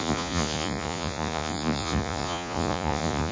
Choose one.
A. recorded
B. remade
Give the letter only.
B